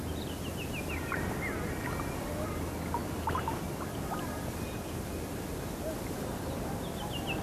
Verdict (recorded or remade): recorded